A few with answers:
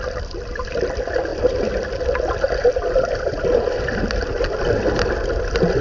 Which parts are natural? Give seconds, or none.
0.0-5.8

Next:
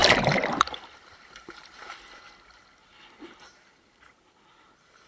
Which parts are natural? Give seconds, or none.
1.9-5.1

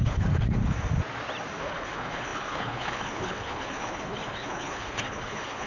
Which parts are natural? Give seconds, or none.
0.6-1.6

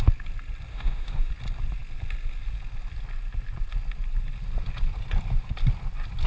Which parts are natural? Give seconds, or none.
0.0-0.7; 1.3-6.3

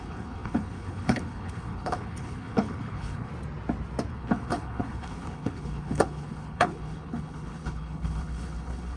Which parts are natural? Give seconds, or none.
3.3-4.1

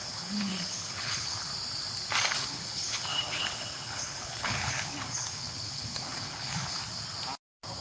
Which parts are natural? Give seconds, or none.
1.5-2.4; 6.8-7.8

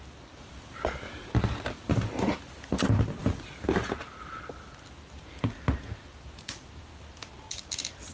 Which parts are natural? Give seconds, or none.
0.0-8.1

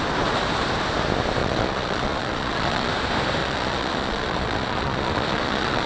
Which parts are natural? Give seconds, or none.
0.0-1.4; 2.9-3.4